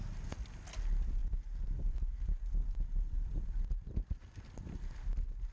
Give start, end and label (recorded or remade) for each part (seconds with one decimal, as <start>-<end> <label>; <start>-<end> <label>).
0.0-1.2 recorded; 1.2-4.5 remade; 4.5-5.5 recorded